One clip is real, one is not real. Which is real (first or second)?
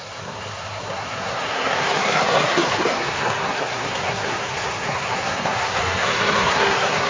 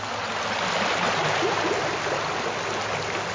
second